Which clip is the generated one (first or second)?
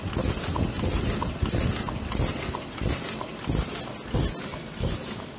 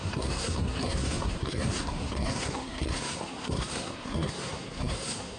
second